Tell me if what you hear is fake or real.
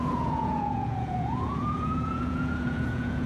fake